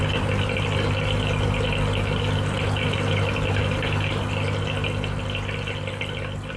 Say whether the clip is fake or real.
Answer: real